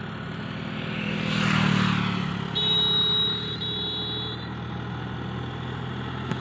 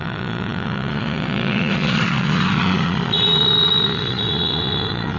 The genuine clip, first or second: first